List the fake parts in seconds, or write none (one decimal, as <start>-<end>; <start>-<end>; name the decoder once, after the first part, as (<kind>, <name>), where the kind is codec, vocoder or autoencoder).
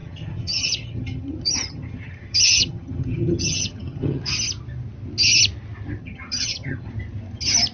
0.0-4.2 (vocoder, HiFi-GAN); 6.0-6.9